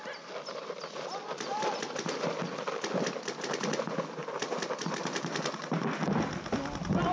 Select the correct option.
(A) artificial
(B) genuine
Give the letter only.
B